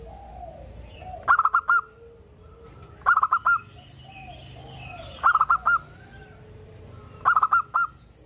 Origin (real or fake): real